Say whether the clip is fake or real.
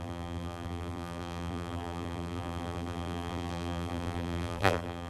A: fake